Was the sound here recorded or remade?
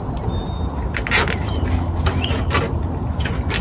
recorded